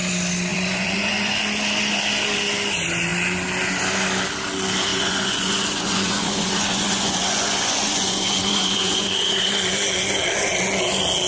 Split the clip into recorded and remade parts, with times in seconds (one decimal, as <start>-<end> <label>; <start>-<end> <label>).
0.0-0.5 recorded; 0.5-1.3 remade; 1.3-4.9 recorded; 4.9-9.5 remade; 9.5-11.3 recorded